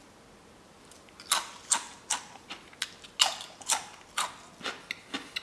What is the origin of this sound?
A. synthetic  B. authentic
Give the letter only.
B